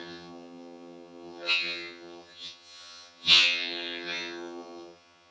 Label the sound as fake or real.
fake